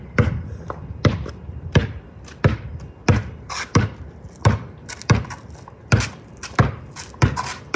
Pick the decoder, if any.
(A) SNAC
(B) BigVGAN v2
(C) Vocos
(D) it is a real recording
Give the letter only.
D